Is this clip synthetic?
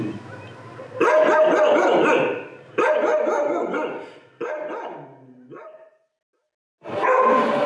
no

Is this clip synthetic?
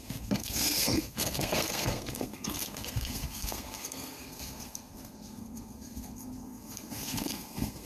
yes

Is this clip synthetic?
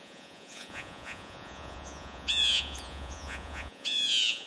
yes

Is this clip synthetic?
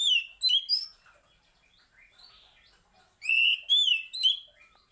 no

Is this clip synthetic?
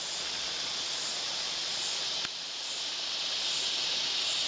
no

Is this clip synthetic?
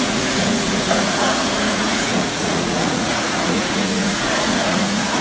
yes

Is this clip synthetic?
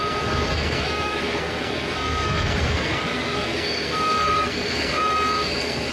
yes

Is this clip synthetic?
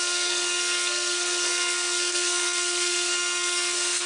yes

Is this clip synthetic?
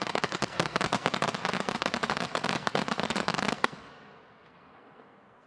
yes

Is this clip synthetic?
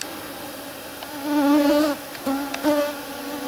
no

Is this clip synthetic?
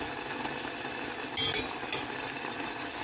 no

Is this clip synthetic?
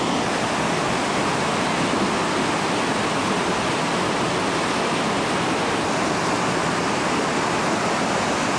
no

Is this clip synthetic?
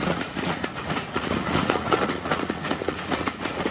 yes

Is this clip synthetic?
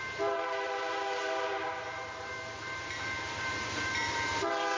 yes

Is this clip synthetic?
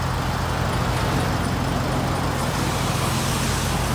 no